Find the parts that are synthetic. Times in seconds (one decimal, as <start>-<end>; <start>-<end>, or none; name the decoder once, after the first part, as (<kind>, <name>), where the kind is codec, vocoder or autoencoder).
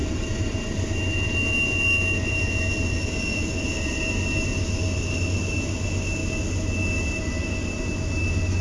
none